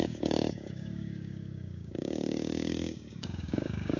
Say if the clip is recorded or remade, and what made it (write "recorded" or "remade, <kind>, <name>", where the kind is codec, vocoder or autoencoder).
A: remade, codec, DAC